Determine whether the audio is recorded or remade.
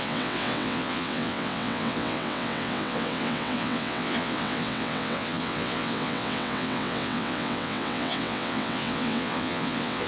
remade